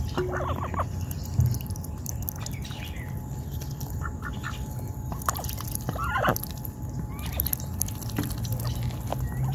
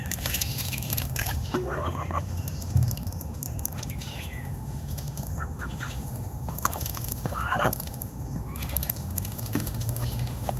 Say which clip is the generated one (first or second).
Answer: second